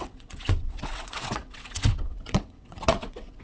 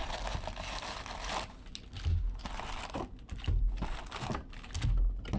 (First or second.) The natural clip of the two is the second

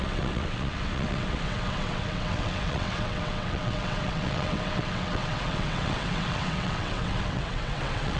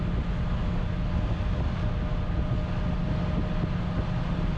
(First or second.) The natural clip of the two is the second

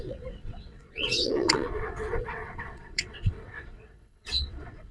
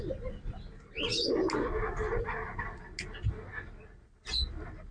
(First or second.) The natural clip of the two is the second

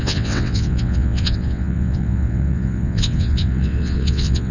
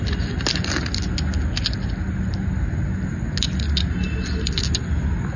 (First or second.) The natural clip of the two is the second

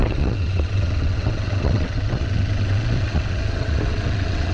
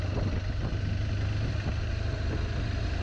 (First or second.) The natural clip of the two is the second